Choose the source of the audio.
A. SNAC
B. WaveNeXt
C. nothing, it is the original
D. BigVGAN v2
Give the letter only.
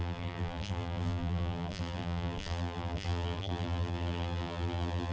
D